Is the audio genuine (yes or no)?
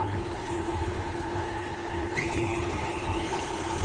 no